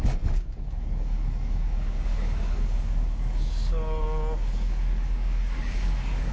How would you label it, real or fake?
fake